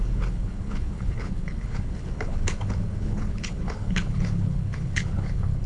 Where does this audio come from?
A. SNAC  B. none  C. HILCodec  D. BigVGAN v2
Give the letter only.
C